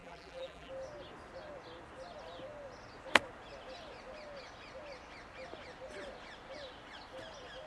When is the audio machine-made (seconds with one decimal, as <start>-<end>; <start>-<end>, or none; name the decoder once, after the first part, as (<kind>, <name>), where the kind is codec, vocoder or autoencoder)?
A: 0.0-0.7 (vocoder, BigVGAN v2)